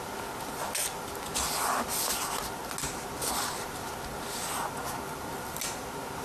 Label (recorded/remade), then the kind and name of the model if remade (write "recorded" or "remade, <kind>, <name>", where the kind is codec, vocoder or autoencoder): recorded